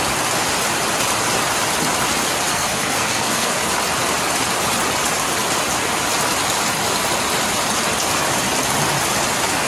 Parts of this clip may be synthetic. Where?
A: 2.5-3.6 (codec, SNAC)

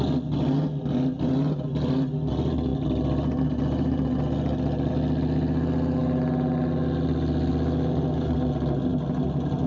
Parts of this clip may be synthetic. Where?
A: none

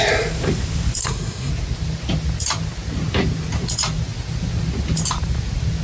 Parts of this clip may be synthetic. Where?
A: 1.0-1.5 (codec, SNAC)

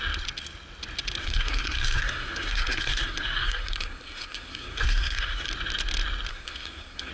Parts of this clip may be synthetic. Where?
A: 1.2-5.5 (codec, SNAC); 6.3-7.1

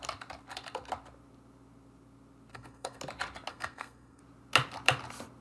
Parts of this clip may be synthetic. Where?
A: 2.5-3.0 (codec, SNAC); 3.5-4.2

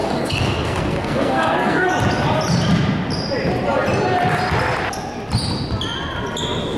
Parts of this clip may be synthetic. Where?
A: 0.0-1.9 (codec, SNAC)

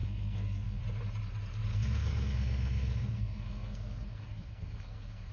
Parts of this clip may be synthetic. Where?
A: 0.0-0.8 (codec, SNAC); 1.7-5.3

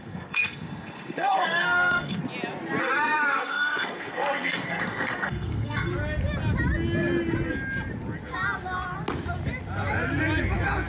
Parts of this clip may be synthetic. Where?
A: 0.0-2.2 (codec, SNAC); 2.8-5.9